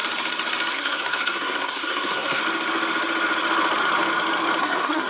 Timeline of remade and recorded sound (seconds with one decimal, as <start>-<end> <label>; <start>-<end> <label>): 0.0-0.7 recorded; 0.7-2.4 remade; 2.4-4.6 recorded; 4.6-5.1 remade